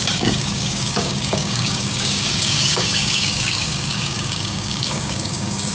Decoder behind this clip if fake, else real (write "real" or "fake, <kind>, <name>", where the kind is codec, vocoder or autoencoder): fake, codec, DAC